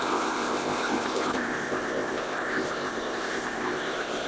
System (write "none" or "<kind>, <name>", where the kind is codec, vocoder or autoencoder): codec, ZipCodec